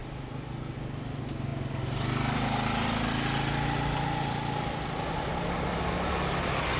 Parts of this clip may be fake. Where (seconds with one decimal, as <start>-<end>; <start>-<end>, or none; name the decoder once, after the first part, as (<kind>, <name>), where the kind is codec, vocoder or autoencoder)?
none

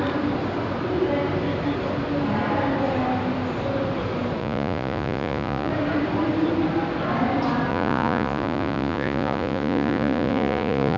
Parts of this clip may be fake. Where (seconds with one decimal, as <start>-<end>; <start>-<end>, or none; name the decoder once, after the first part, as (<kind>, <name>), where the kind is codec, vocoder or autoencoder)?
4.4-5.7 (vocoder, Vocos); 7.7-11.0

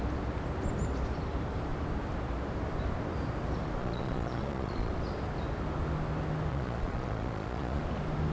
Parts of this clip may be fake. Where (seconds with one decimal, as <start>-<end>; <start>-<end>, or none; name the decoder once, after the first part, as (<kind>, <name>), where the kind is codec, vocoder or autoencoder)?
3.8-4.9 (vocoder, Vocos); 6.5-7.8

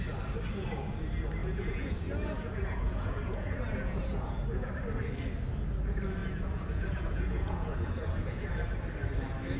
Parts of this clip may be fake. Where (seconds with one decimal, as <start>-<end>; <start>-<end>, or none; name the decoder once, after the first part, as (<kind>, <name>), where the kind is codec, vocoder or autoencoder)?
1.4-4.7 (vocoder, Vocos); 6.2-8.5

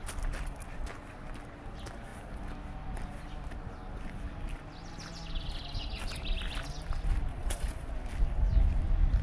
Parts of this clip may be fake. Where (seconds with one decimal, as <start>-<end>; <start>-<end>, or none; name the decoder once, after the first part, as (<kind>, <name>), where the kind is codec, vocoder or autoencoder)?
7.3-7.9 (vocoder, Vocos)

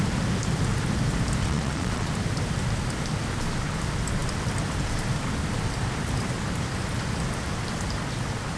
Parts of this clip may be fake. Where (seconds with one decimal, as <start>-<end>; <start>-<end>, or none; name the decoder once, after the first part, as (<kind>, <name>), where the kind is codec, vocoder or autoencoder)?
1.4-2.1 (vocoder, Vocos)